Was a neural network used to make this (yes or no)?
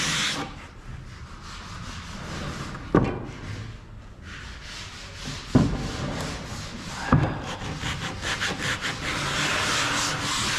no